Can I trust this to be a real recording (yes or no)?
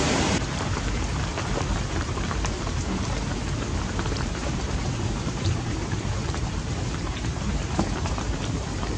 no